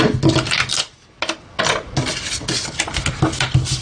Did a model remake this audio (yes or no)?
no